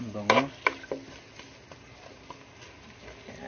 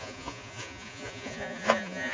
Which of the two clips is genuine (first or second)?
first